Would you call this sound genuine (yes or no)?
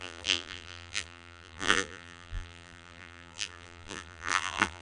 no